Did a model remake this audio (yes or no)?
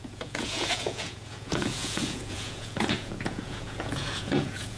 yes